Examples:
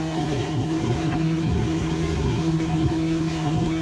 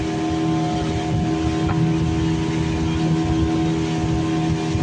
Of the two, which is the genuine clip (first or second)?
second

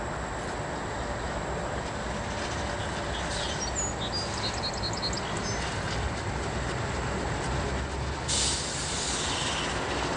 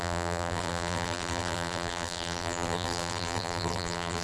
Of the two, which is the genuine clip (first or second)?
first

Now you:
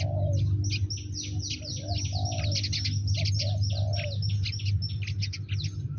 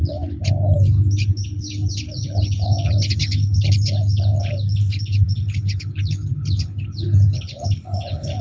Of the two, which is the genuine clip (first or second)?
first